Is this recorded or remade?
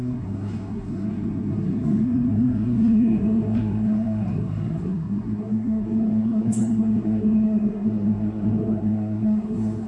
remade